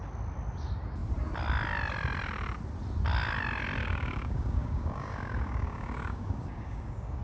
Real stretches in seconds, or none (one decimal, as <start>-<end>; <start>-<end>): 0.0-3.8